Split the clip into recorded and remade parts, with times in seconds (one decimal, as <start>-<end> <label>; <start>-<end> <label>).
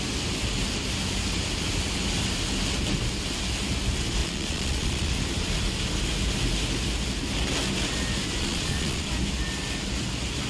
0.0-4.2 recorded; 4.2-5.1 remade; 5.1-8.4 recorded; 8.4-9.1 remade; 9.1-10.5 recorded